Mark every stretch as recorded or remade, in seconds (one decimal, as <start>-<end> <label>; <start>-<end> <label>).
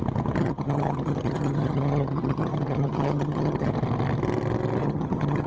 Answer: 0.0-0.4 recorded; 0.4-3.7 remade; 3.7-4.8 recorded; 4.8-5.5 remade